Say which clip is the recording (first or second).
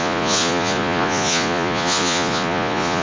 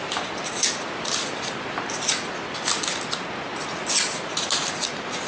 second